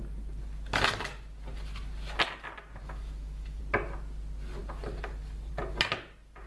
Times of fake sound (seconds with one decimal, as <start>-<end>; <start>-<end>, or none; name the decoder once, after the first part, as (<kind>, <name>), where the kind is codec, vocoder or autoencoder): 2.8-3.6 (autoencoder, DAC-VAE)